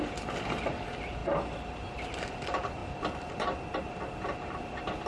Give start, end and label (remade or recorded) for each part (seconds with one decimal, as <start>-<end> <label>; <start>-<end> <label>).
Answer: 0.0-5.1 recorded